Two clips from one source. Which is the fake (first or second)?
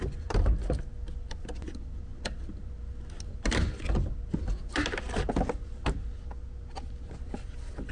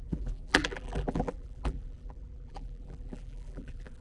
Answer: second